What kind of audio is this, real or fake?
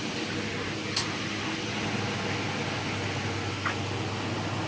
real